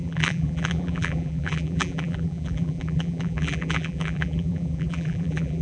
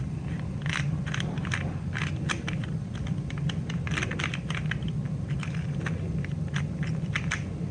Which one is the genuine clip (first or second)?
second